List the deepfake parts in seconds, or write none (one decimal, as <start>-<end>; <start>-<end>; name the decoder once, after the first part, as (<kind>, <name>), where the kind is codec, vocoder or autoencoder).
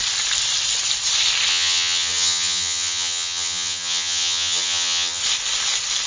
1.5-5.2 (vocoder, HiFi-GAN)